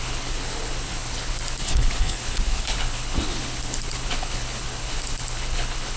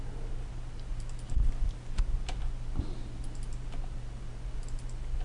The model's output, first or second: first